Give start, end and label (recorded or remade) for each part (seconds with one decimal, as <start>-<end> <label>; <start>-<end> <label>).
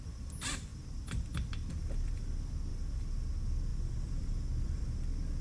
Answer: 0.0-0.7 recorded; 0.7-1.7 remade; 1.7-3.7 recorded; 3.7-4.8 remade; 4.8-5.4 recorded